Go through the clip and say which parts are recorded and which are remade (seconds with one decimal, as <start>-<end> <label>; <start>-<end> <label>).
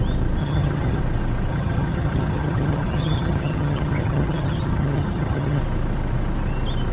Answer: 0.0-0.4 recorded; 0.4-1.0 remade; 1.0-1.5 recorded; 1.5-5.6 remade; 5.6-6.9 recorded